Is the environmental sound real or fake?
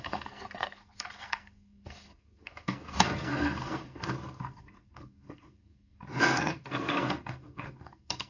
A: fake